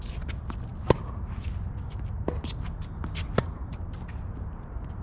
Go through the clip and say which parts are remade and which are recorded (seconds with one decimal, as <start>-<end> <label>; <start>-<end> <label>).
0.0-0.7 remade; 0.7-3.7 recorded; 3.7-5.0 remade